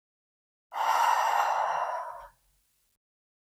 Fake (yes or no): no